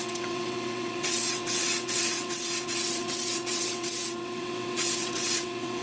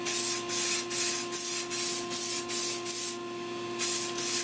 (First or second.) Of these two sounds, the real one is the second